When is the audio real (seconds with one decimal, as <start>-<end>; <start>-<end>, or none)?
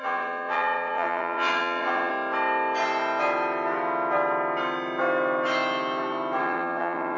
2.1-6.4